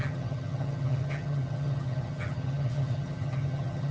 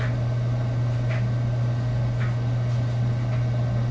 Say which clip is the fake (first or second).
first